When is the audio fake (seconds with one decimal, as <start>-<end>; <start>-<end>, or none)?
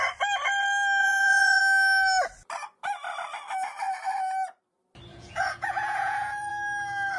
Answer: 1.0-1.6; 5.1-6.5